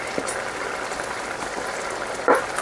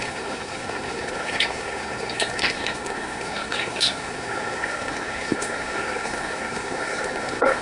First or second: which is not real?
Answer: second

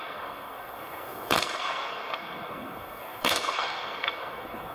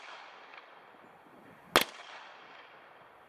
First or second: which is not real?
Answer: first